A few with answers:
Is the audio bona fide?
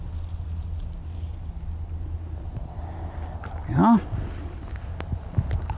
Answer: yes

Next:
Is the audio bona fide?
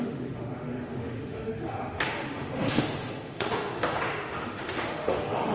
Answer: no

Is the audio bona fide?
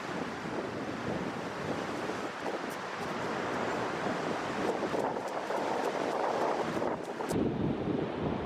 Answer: yes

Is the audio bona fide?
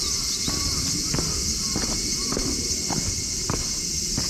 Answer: yes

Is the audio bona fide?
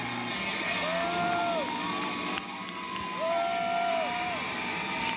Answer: yes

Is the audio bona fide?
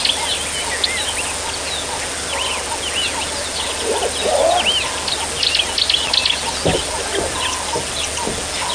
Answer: yes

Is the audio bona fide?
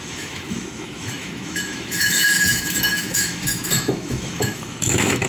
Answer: no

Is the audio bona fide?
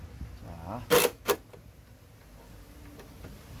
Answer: yes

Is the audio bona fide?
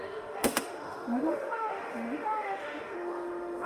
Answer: no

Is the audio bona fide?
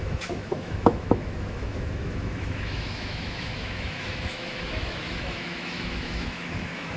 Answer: no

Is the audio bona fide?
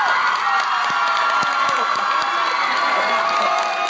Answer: yes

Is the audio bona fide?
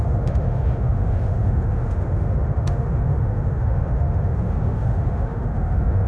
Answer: no